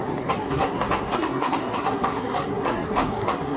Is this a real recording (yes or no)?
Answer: no